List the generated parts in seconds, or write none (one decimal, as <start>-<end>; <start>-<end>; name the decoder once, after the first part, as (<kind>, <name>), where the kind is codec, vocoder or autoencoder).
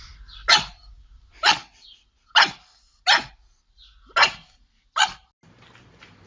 none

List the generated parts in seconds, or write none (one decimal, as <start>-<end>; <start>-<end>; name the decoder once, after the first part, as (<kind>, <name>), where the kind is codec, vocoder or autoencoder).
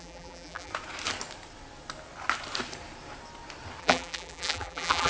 0.0-0.7 (vocoder, BigVGAN v2); 3.8-5.1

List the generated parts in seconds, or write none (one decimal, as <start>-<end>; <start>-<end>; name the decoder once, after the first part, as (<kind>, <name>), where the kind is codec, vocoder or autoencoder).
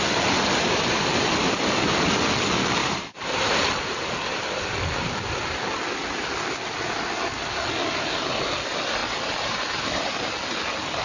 2.8-4.0 (vocoder, BigVGAN v2); 9.0-10.5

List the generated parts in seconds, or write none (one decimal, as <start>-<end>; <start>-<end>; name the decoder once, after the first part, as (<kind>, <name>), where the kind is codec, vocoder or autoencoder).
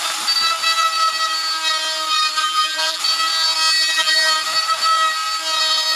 2.4-3.0 (vocoder, BigVGAN v2); 3.7-4.3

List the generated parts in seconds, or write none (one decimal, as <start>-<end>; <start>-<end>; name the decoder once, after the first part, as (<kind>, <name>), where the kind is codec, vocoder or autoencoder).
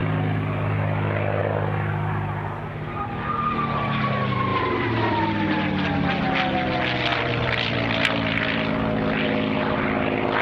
4.5-5.2 (vocoder, BigVGAN v2); 7.1-8.7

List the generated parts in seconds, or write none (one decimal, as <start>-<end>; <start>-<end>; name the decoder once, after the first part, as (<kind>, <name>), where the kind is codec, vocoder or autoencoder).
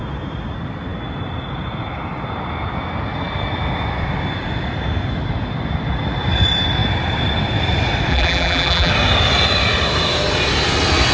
8.1-8.9 (vocoder, BigVGAN v2)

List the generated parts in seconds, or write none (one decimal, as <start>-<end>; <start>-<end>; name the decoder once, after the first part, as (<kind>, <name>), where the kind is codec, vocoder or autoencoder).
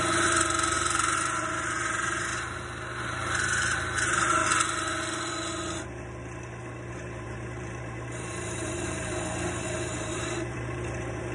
0.0-2.3 (vocoder, BigVGAN v2); 3.6-4.4; 6.9-11.3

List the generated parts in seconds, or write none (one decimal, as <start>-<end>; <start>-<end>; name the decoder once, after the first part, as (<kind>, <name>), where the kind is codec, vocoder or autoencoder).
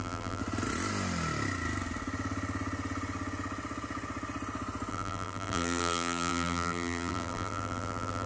0.0-0.4 (vocoder, BigVGAN v2); 4.9-8.3